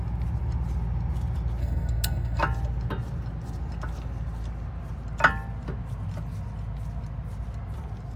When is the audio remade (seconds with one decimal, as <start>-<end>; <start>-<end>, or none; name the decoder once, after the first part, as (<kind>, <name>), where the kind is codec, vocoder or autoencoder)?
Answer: 1.6-2.4 (codec, SNAC)